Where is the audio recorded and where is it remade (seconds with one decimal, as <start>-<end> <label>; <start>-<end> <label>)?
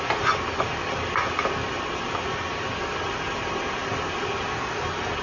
0.0-5.2 recorded